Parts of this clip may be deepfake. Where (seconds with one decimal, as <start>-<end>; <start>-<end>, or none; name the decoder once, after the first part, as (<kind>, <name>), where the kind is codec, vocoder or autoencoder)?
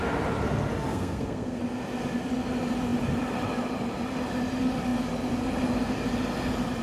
0.9-1.6 (codec, SNAC)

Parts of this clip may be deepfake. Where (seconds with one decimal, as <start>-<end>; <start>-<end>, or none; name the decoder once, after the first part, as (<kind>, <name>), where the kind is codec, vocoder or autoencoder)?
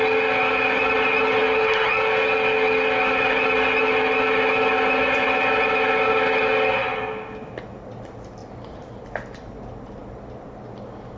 8.4-10.2 (vocoder, BigVGAN v2)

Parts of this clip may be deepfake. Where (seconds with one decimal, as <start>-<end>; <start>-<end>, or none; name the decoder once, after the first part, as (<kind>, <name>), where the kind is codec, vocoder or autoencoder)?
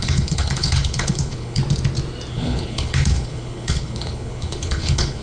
0.0-1.6 (codec, HILCodec); 2.3-5.2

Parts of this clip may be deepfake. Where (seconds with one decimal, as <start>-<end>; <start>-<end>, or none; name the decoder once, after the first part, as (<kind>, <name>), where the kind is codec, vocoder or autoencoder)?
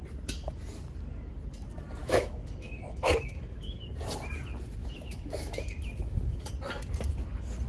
2.0-3.8 (autoencoder, DAC-VAE); 4.8-6.5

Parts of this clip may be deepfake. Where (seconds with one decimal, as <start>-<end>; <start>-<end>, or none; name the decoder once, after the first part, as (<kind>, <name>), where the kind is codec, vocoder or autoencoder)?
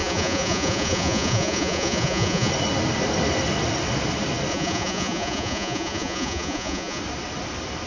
0.0-2.5 (vocoder, Vocos); 4.5-7.0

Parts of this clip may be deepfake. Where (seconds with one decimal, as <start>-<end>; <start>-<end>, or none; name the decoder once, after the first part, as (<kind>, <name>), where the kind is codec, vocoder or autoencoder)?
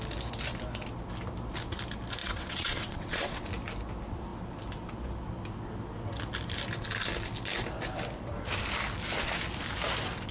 2.2-3.5 (vocoder, WaveNeXt)